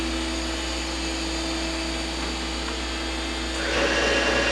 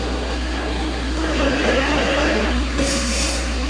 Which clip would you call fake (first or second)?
second